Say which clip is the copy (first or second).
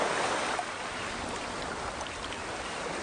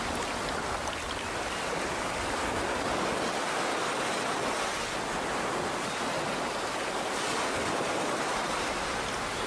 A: first